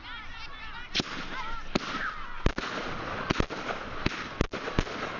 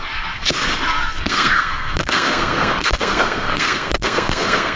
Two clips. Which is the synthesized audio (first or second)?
second